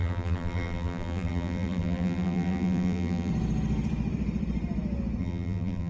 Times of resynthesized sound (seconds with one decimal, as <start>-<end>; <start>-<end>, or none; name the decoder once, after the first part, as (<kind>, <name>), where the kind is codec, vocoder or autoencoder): 0.0-3.3 (vocoder, BigVGAN v2); 5.2-5.9

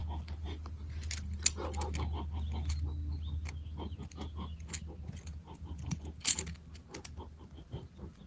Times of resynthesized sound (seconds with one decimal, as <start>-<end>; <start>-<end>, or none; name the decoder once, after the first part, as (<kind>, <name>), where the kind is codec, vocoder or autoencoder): none

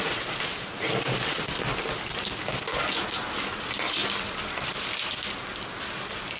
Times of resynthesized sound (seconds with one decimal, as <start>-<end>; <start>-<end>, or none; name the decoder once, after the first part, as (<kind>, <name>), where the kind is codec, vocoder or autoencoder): none

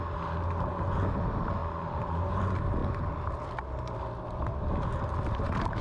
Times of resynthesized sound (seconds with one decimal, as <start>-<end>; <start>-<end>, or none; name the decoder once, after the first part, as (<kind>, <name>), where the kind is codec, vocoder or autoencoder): 1.6-2.2 (vocoder, BigVGAN v2)

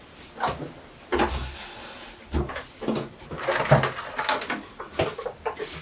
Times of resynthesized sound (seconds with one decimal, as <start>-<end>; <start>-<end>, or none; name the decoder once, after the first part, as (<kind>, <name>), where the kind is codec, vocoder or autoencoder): none

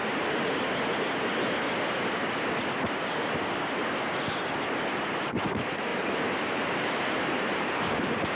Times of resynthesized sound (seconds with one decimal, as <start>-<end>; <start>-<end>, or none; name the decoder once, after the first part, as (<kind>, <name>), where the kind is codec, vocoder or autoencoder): 5.9-8.4 (vocoder, BigVGAN v2)